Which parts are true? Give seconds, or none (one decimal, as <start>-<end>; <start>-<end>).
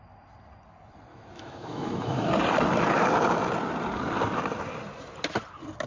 0.0-1.1; 2.3-5.9